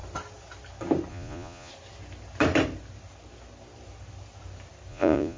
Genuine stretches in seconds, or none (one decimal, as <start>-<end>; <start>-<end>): 0.0-1.1; 1.7-4.9